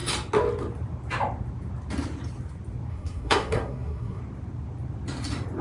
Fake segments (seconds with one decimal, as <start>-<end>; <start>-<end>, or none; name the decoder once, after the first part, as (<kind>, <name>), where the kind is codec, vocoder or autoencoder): 2.9-4.2 (codec, SNAC)